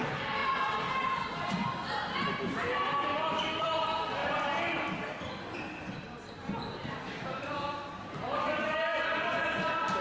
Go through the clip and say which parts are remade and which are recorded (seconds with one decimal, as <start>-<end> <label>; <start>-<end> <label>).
0.0-0.4 remade; 0.4-1.0 recorded; 1.0-1.8 remade; 1.8-2.6 recorded; 2.6-4.2 remade; 4.2-5.8 recorded; 5.8-10.0 remade